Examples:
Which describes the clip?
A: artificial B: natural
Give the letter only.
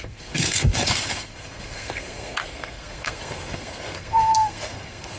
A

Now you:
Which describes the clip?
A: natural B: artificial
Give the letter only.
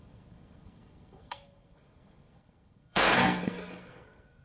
B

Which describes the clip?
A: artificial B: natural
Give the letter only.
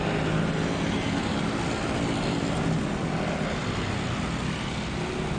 B